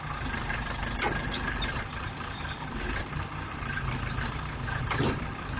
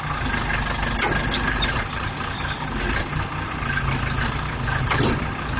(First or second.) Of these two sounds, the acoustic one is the second